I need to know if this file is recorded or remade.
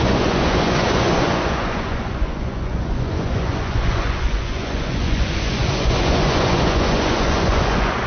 remade